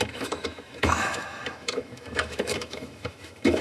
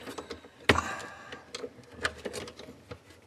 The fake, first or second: first